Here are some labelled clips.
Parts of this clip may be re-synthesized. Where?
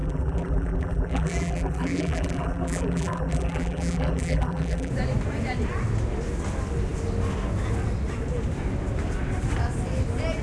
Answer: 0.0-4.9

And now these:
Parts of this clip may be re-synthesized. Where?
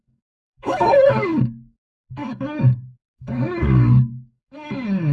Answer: 0.0-5.1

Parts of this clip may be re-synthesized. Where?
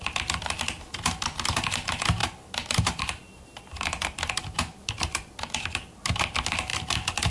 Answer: none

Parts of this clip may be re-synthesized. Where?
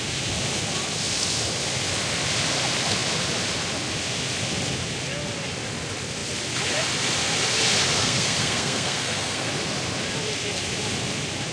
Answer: 8.0-9.5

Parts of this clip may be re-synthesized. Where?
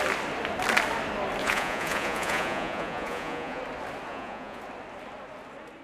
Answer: 1.4-3.6; 4.1-4.6